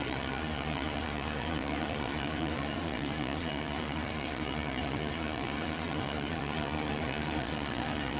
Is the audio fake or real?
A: fake